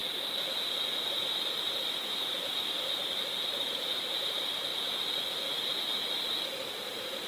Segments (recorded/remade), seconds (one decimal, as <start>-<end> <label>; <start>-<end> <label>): 0.0-1.1 recorded; 1.1-7.3 remade